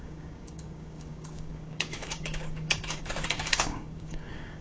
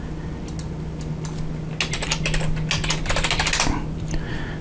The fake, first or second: first